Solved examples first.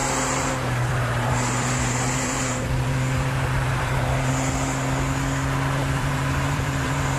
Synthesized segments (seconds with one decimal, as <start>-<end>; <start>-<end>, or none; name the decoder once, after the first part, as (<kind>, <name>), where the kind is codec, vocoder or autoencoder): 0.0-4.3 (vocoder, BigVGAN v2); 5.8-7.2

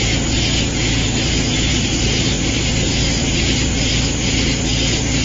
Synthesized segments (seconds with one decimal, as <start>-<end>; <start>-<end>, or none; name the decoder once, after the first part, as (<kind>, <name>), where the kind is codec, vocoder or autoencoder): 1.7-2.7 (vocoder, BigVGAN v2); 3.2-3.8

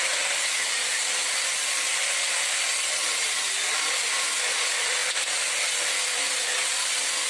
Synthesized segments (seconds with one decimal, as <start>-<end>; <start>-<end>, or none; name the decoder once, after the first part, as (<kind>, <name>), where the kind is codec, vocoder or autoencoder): none

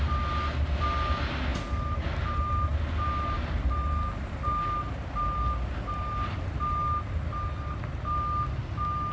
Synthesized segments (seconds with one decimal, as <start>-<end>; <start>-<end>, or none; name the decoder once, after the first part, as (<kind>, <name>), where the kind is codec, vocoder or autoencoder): none

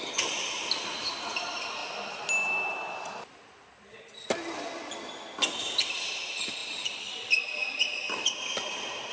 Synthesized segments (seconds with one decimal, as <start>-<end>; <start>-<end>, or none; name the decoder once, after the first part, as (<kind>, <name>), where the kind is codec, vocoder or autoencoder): 6.6-7.8 (vocoder, BigVGAN v2)

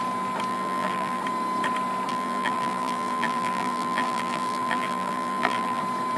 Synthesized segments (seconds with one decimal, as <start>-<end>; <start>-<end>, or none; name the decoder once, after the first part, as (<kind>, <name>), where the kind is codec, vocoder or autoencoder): 0.5-1.2 (vocoder, BigVGAN v2); 2.1-5.8

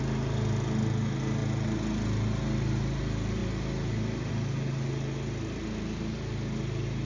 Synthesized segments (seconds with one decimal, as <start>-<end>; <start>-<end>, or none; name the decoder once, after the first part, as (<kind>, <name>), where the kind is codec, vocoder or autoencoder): none

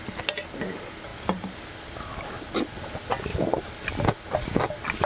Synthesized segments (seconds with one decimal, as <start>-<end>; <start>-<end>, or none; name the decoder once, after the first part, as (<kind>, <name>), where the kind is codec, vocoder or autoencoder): none